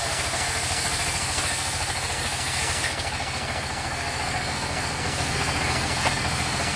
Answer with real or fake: fake